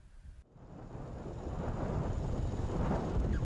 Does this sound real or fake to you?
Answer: real